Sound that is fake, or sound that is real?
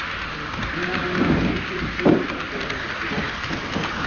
real